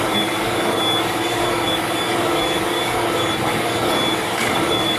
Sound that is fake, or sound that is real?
fake